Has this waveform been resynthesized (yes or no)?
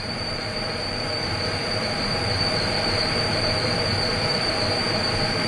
yes